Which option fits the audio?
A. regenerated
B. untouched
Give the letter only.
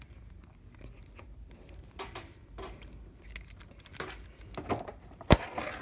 B